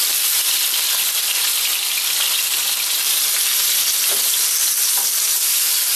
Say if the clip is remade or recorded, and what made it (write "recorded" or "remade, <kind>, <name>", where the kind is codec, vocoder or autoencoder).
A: recorded